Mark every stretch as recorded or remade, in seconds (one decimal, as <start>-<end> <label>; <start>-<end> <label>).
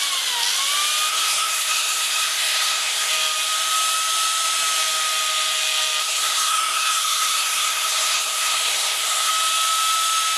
0.0-1.1 recorded; 1.1-3.1 remade; 3.1-6.0 recorded; 6.0-9.3 remade; 9.3-10.4 recorded